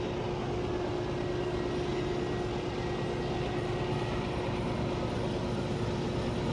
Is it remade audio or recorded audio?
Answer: recorded